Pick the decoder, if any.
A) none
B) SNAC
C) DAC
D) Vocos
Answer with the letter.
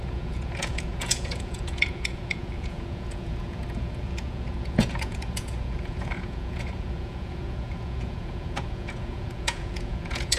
D